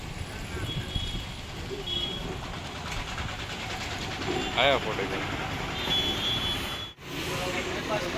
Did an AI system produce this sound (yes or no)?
no